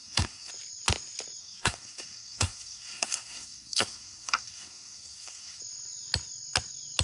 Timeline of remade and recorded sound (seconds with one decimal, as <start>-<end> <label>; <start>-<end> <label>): 0.0-0.5 remade; 0.5-1.4 recorded; 1.4-5.6 remade; 5.6-7.0 recorded